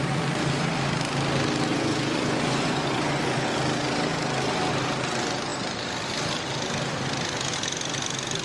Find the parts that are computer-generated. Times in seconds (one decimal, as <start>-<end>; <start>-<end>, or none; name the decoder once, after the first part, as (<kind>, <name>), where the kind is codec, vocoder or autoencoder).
1.7-3.2 (vocoder, Vocos)